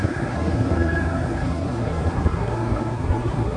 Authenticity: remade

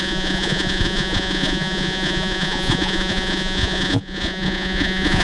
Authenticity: remade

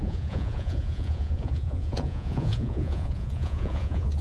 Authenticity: remade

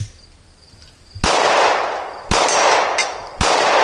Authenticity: recorded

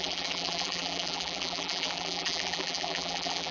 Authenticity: remade